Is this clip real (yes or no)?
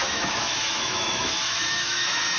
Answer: no